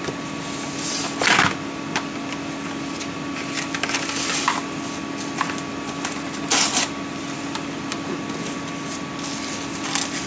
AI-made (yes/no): no